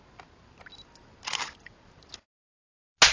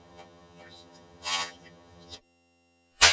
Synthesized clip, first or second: second